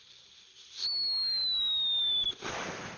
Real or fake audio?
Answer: real